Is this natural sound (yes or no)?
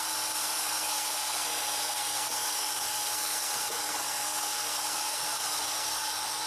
no